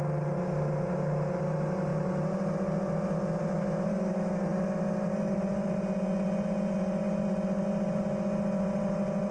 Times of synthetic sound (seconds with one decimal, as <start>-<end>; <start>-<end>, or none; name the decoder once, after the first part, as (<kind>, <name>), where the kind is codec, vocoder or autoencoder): none